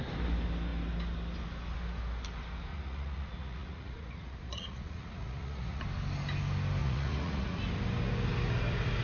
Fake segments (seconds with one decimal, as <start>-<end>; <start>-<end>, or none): 2.7-5.8; 6.8-7.6